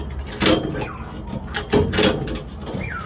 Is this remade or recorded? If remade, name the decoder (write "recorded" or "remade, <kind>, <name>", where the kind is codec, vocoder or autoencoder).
recorded